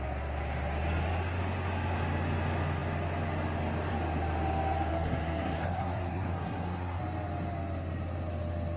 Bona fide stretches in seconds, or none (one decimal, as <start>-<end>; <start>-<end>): 0.0-4.9; 7.0-8.8